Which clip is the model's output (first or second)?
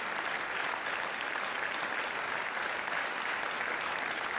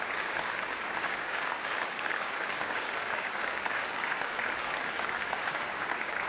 second